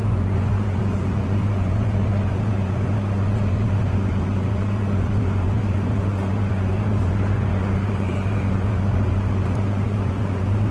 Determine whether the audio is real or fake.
fake